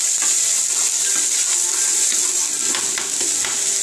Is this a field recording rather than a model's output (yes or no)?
yes